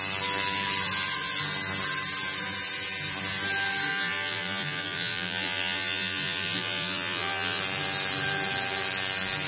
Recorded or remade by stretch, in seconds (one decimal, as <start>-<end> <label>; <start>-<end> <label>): 0.0-3.9 recorded; 3.9-7.6 remade; 7.6-9.5 recorded